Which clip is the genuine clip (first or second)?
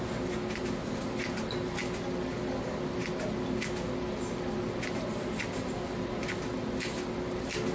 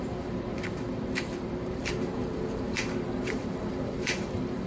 first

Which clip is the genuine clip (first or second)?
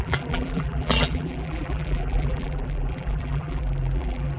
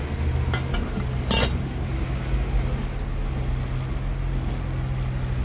second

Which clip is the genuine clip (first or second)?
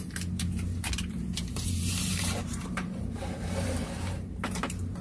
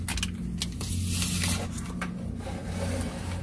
second